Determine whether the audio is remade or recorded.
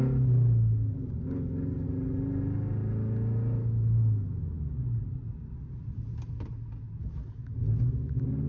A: recorded